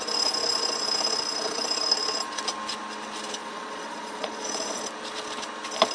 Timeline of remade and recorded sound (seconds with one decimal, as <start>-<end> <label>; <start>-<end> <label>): 0.0-3.4 recorded; 3.4-4.8 remade; 4.8-5.9 recorded